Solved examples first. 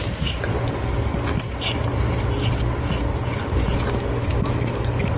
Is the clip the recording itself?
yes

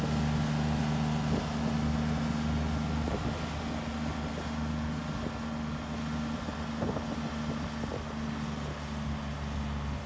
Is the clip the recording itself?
yes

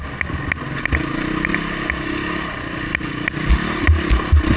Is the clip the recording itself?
yes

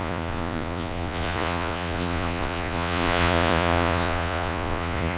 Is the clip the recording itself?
no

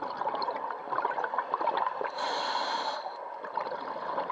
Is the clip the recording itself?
yes